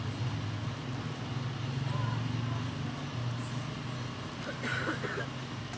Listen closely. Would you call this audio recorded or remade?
recorded